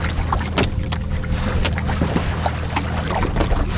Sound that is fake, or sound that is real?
real